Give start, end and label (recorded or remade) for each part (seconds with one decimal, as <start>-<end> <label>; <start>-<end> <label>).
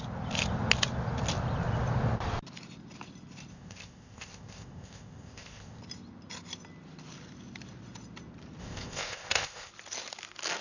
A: 0.0-3.5 recorded; 3.5-5.8 remade; 5.8-8.6 recorded; 8.6-9.7 remade; 9.7-10.6 recorded